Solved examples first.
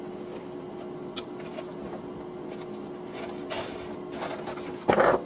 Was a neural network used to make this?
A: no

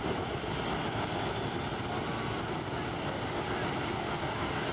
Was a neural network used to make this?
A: no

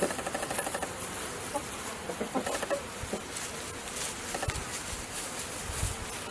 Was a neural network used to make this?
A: no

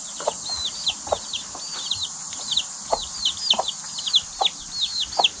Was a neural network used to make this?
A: no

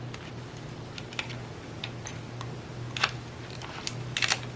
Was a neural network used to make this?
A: no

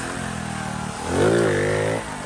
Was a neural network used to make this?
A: no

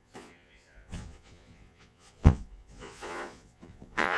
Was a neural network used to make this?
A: yes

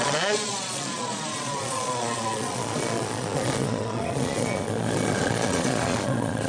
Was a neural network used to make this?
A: yes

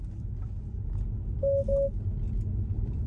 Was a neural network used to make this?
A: no